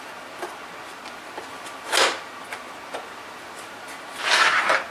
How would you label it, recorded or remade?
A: recorded